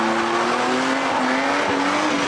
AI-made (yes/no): no